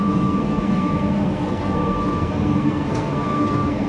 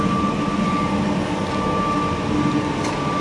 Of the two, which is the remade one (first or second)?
first